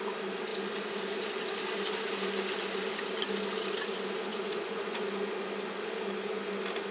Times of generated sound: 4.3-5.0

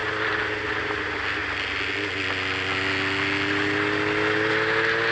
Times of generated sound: none

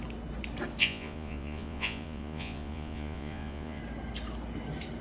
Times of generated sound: 0.8-3.8

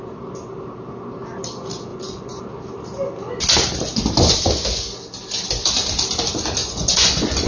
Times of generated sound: 1.9-2.4; 6.6-7.5